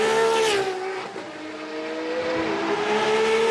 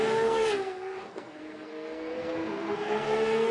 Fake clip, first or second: second